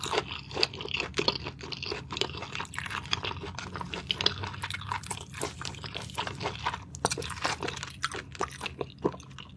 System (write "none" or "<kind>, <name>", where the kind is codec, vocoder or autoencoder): none